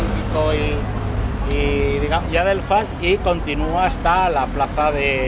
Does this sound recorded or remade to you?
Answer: recorded